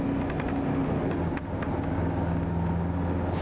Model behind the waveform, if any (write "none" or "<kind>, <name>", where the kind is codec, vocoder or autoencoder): none